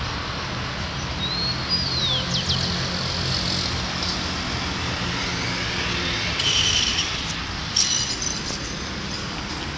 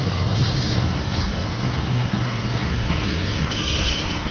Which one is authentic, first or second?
first